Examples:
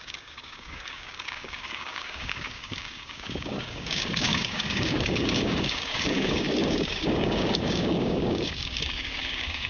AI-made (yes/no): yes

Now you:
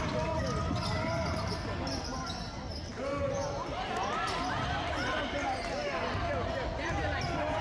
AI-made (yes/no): no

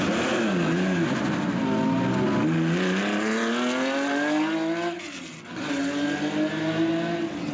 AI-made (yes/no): no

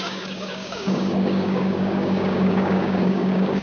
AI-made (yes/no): yes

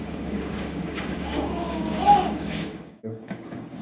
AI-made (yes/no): yes